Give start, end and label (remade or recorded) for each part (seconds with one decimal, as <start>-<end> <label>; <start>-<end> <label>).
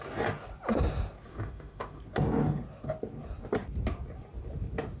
0.0-1.3 recorded; 1.3-2.0 remade; 2.0-5.0 recorded